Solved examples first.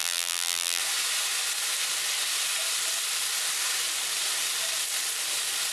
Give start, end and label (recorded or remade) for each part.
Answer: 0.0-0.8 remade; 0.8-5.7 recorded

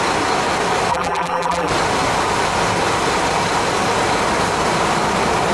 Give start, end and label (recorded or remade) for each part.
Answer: 0.0-0.9 recorded; 0.9-1.7 remade; 1.7-5.5 recorded

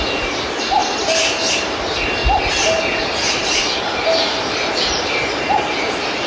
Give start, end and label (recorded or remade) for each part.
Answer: 0.0-0.8 remade; 0.8-1.6 recorded; 1.6-2.2 remade; 2.2-3.4 recorded; 3.4-6.3 remade

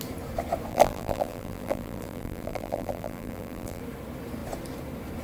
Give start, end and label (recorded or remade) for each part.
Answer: 0.0-0.7 recorded; 0.7-3.8 remade; 3.8-5.2 recorded

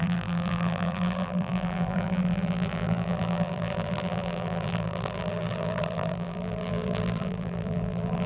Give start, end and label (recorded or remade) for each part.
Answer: 0.0-8.3 remade

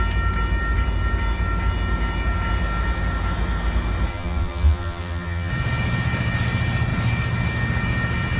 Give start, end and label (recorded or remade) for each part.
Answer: 0.0-4.1 recorded; 4.1-5.5 remade; 5.5-8.4 recorded